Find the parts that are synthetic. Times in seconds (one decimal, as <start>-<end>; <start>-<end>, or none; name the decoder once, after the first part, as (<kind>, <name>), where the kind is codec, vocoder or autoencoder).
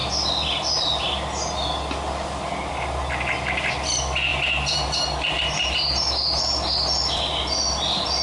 none